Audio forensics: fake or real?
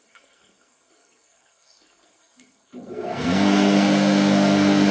fake